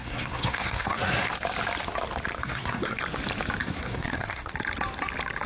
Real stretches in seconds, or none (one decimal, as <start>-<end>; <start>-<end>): 1.3-2.4; 3.0-3.6; 4.5-5.5

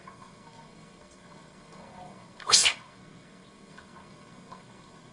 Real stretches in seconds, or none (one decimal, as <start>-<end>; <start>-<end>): none

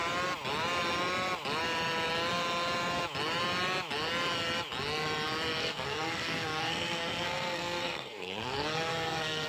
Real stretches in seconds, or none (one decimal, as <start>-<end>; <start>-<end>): 0.0-5.6

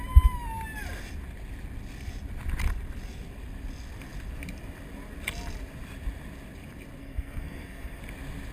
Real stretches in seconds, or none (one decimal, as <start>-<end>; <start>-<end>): 0.0-7.0; 8.0-8.5